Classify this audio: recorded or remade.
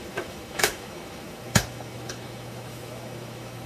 remade